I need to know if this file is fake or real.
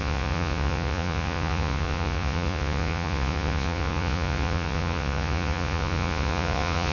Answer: fake